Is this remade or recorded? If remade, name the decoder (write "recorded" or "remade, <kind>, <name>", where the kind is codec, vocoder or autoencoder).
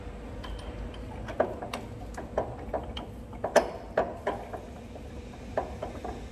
recorded